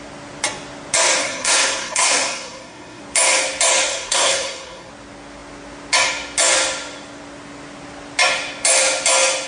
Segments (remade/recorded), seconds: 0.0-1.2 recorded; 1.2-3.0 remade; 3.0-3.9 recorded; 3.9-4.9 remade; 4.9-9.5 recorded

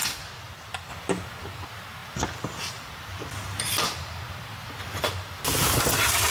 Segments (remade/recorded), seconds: 0.0-6.3 recorded

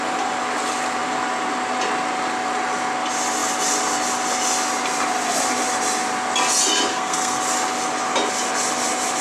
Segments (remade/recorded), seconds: 0.0-6.9 recorded; 6.9-7.4 remade; 7.4-9.2 recorded

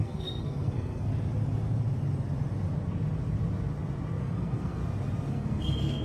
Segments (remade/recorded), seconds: 0.0-1.1 remade; 1.1-4.2 recorded; 4.2-4.8 remade; 4.8-5.3 recorded; 5.3-6.0 remade

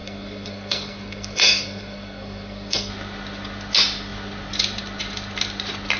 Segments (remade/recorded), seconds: 0.0-2.9 remade; 2.9-6.0 recorded

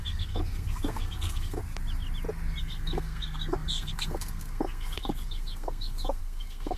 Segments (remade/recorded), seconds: 0.0-1.6 remade; 1.6-2.6 recorded; 2.6-6.8 remade

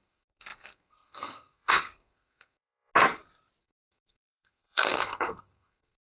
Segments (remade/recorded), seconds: 0.0-2.9 remade; 2.9-3.6 recorded; 3.6-6.0 remade